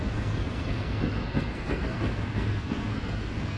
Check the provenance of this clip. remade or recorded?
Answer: remade